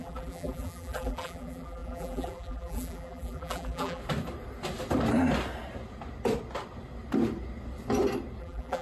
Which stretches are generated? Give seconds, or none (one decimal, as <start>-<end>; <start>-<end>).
0.0-4.0; 8.4-8.8